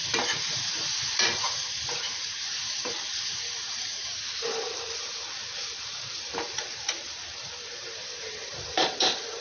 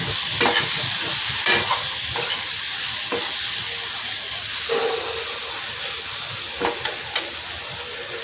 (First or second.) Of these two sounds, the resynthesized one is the first